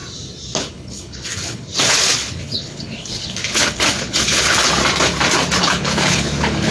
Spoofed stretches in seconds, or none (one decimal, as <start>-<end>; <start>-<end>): 0.6-4.8; 5.6-6.7